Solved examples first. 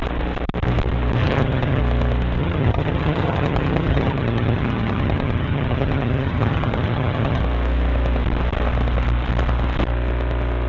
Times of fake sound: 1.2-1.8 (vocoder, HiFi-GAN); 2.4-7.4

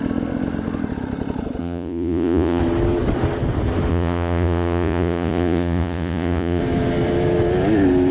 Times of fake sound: 1.6-2.6 (vocoder, Vocos); 3.9-6.6

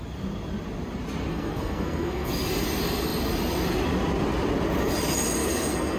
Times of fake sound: 1.3-2.3 (codec, SNAC); 5.4-6.0